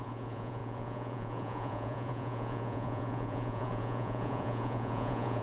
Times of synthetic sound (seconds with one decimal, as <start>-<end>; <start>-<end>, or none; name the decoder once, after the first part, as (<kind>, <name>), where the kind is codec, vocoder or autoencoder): 0.0-5.4 (vocoder, Vocos)